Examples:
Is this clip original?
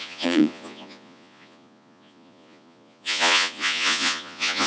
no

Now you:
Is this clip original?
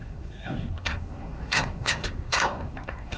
no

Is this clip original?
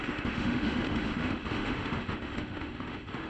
no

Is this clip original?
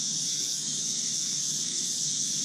no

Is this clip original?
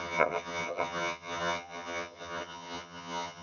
no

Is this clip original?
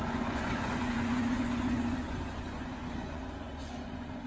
no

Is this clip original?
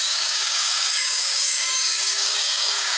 no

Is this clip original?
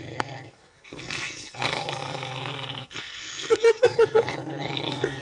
no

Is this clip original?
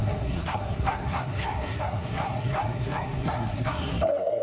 no